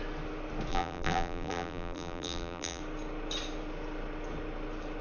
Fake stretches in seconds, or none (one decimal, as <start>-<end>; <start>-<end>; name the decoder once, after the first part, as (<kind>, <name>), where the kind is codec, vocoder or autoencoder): 0.7-2.8 (vocoder, BigVGAN v2)